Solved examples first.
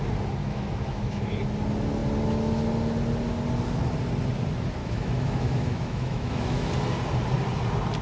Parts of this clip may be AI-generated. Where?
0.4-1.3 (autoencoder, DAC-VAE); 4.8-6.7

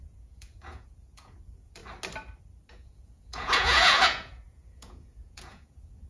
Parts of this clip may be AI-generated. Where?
0.0-1.8 (vocoder, Vocos); 2.7-6.1